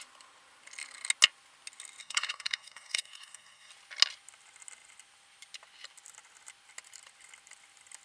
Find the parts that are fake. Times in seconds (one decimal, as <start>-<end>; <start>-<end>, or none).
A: 2.0-3.7